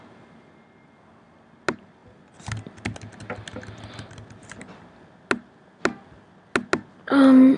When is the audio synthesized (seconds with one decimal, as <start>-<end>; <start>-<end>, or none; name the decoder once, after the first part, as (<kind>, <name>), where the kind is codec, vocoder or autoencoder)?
none